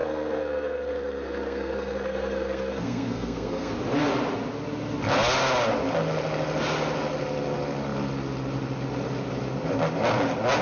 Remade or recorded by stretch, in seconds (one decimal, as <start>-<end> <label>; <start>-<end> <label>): 0.0-3.7 remade; 3.7-10.6 recorded